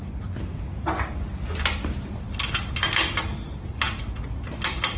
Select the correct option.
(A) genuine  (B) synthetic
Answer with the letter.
A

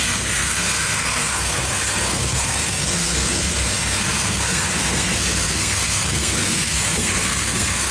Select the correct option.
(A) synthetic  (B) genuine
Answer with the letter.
A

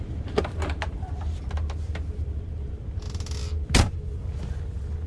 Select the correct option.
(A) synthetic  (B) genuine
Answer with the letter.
B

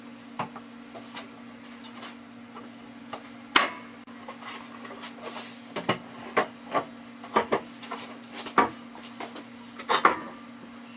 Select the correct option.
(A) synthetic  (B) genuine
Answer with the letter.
B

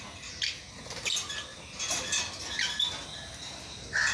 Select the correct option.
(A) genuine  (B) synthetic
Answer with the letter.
A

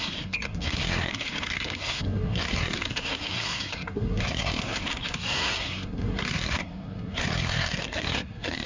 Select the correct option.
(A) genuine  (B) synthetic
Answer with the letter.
B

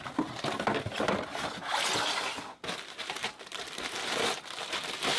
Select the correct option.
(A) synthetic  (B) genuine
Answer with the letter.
B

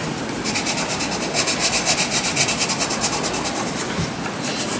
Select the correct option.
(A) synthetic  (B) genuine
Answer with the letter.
B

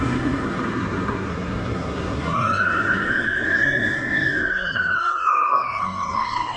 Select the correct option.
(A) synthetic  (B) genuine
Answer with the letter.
A